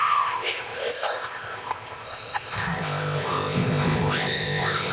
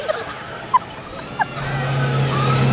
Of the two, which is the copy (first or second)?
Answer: first